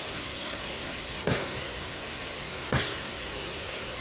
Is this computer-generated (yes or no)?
yes